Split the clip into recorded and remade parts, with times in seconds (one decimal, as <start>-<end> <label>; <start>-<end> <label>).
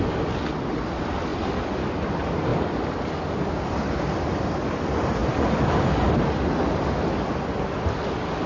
0.0-1.3 recorded; 1.3-1.8 remade; 1.8-5.2 recorded; 5.2-5.9 remade; 5.9-8.5 recorded